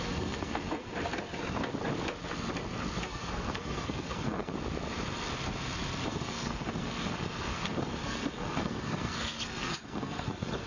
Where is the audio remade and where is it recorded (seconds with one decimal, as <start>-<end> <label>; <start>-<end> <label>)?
0.0-0.9 remade; 0.9-3.0 recorded; 3.0-4.5 remade; 4.5-6.1 recorded; 6.1-10.7 remade